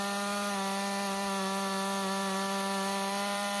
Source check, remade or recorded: remade